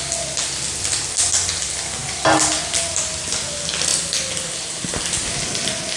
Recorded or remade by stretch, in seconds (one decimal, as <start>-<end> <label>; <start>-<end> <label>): 0.0-6.0 recorded